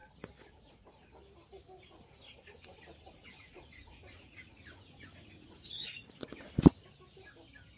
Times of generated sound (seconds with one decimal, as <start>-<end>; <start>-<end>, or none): 0.5-1.1; 3.1-6.3